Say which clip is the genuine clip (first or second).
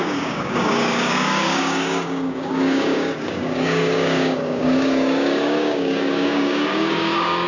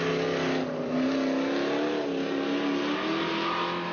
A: second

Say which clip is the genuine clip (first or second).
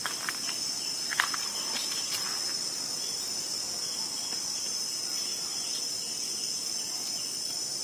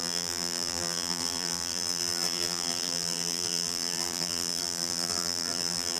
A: first